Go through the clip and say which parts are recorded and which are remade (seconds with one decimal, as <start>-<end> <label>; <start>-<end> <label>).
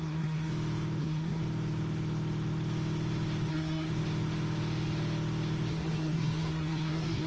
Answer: 0.0-0.5 remade; 0.5-1.0 recorded; 1.0-1.4 remade; 1.4-3.5 recorded; 3.5-3.9 remade; 3.9-5.7 recorded; 5.7-7.3 remade